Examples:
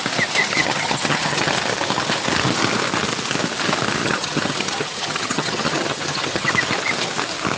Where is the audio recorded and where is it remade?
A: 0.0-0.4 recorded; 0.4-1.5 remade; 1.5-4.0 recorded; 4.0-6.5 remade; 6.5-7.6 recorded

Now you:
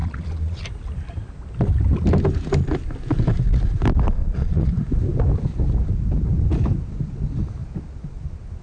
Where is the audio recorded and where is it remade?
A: 0.0-0.6 remade; 0.6-4.2 recorded; 4.2-4.7 remade; 4.7-8.6 recorded

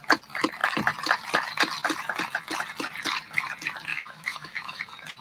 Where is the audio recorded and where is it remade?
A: 0.0-3.9 recorded; 3.9-4.8 remade; 4.8-5.2 recorded

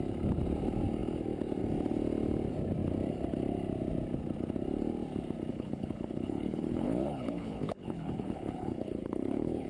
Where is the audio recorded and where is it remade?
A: 0.0-5.5 recorded; 5.5-9.7 remade